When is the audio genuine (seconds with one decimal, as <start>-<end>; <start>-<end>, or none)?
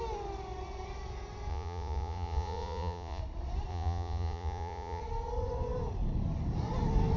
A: 0.0-1.5; 3.2-3.7; 5.0-7.2